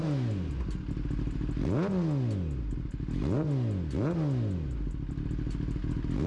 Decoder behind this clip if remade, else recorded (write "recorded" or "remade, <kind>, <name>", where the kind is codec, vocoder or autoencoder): recorded